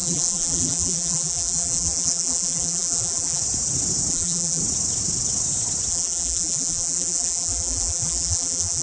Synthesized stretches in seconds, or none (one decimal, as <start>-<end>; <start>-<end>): 0.0-3.4; 4.1-4.6; 5.9-8.8